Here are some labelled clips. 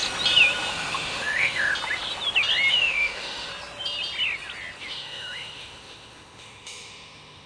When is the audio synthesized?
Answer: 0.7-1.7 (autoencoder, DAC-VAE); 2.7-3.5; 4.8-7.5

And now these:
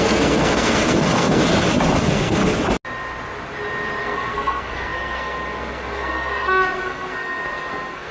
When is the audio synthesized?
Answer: 0.0-1.4 (codec, SNAC); 2.0-2.4; 4.0-8.1

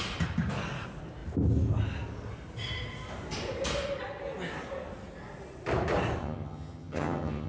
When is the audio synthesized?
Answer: 6.2-7.5 (vocoder, HiFi-GAN)

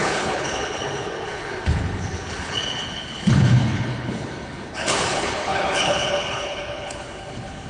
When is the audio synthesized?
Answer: 0.0-7.7 (codec, HILCodec)

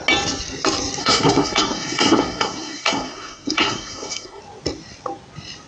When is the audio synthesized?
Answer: 1.0-4.4 (codec, SNAC)